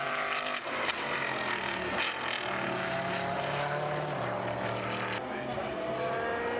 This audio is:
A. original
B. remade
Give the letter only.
A